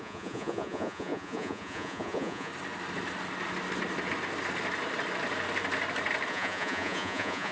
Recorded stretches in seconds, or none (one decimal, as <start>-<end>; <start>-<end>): 2.5-6.3